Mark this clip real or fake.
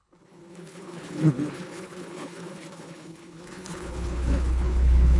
fake